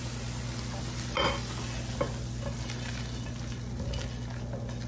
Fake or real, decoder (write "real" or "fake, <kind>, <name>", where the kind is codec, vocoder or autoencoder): real